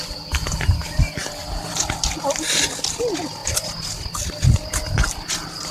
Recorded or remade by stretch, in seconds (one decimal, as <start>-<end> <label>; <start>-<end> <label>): 0.0-5.7 recorded